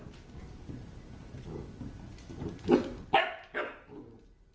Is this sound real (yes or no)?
yes